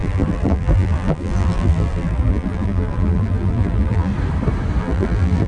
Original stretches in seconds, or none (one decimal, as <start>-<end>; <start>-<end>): 4.1-4.8